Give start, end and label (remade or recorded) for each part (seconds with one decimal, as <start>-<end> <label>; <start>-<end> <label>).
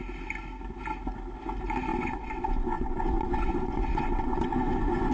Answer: 0.0-1.9 recorded; 1.9-5.1 remade